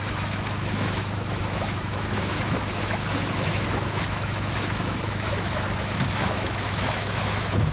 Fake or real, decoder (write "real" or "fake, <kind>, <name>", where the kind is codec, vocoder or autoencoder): fake, autoencoder, DAC-VAE